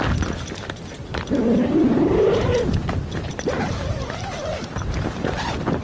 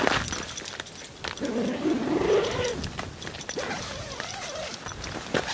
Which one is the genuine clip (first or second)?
second